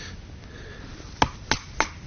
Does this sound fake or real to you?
real